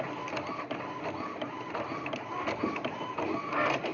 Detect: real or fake real